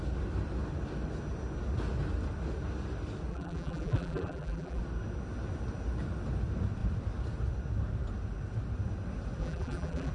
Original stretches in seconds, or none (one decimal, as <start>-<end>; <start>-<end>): 0.0-3.3; 4.8-9.4